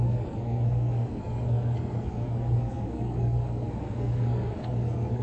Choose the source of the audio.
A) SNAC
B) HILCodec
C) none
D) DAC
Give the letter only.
A